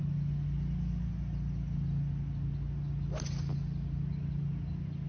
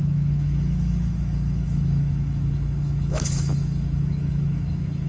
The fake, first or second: second